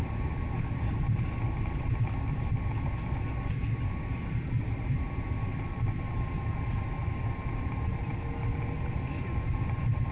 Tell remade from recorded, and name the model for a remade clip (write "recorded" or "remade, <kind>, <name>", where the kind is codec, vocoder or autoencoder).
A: recorded